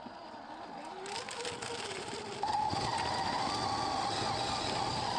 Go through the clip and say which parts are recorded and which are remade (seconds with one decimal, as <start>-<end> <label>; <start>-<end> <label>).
0.0-5.2 recorded